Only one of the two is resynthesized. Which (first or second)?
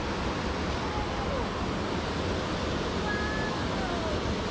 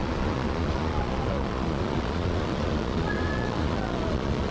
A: second